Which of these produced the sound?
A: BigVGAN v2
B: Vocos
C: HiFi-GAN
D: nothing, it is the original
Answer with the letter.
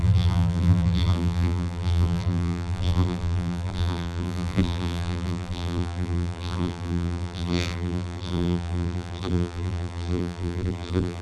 A